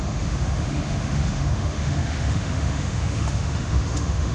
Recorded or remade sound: remade